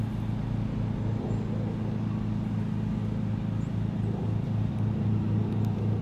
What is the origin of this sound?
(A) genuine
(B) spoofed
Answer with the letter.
A